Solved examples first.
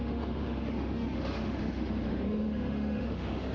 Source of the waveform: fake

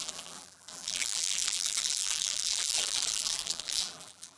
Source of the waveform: fake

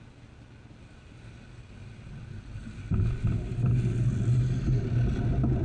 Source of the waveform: real